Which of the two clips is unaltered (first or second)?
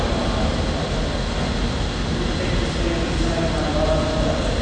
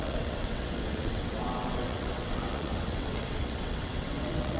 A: first